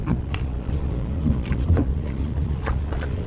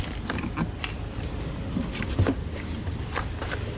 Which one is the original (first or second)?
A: second